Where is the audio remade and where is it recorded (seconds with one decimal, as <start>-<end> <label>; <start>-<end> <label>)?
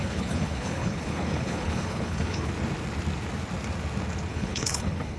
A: 0.0-2.5 remade; 2.5-4.3 recorded; 4.3-5.2 remade